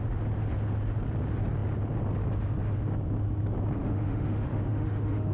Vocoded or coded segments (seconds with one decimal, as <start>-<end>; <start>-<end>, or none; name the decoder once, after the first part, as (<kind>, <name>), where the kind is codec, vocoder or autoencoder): 3.8-5.3 (autoencoder, DAC-VAE)